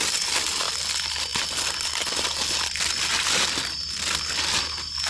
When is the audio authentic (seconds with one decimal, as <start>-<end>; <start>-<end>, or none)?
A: 0.0-5.1